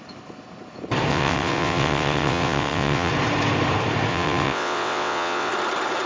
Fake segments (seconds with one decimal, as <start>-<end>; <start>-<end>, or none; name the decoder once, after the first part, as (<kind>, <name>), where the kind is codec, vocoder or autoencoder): 1.1-3.1 (vocoder, WaveNeXt); 4.1-5.5